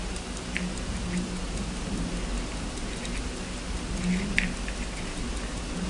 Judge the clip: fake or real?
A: real